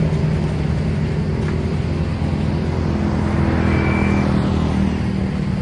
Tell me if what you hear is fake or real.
real